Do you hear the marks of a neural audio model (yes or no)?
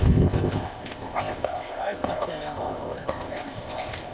yes